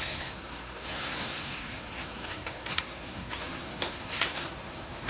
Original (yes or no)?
no